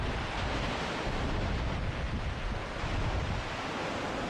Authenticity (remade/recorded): recorded